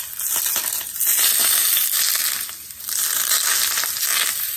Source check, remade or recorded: recorded